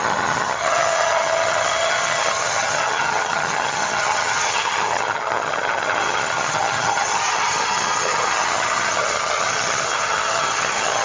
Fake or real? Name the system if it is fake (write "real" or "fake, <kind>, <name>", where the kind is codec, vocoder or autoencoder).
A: fake, vocoder, HiFi-GAN